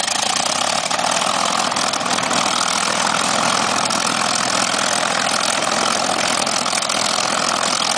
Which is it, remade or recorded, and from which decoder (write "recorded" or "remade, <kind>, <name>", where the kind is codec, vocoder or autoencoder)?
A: recorded